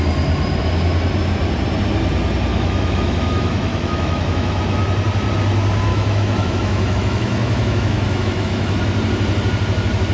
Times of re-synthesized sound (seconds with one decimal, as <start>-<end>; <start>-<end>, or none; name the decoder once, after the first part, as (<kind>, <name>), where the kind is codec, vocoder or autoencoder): 2.5-4.6 (autoencoder, DAC-VAE); 5.9-8.8